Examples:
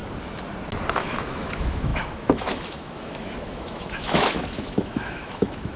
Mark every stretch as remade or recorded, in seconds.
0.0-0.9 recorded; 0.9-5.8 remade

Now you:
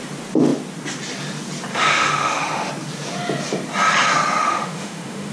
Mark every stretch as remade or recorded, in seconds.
0.0-1.7 recorded; 1.7-2.7 remade; 2.7-4.4 recorded; 4.4-5.3 remade

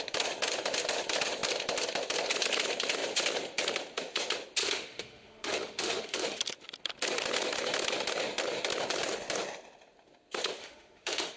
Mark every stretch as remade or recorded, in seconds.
0.0-4.6 recorded; 4.6-6.4 remade; 6.4-10.6 recorded; 10.6-11.4 remade

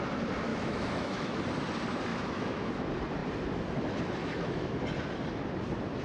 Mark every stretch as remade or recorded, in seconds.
0.0-0.5 recorded; 0.5-1.4 remade; 1.4-2.1 recorded; 2.1-2.7 remade; 2.7-4.2 recorded; 4.2-4.8 remade; 4.8-6.0 recorded

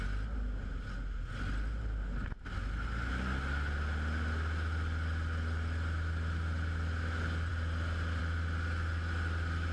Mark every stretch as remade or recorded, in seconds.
0.0-9.7 recorded

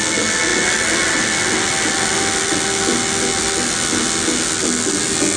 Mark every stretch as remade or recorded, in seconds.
0.0-5.4 recorded

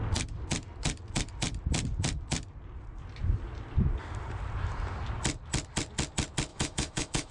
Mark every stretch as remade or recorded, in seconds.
0.0-6.5 recorded; 6.5-7.3 remade

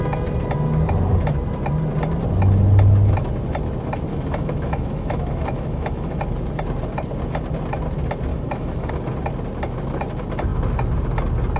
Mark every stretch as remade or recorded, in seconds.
0.0-4.1 recorded; 4.1-6.2 remade; 6.2-8.3 recorded; 8.3-8.9 remade; 8.9-11.6 recorded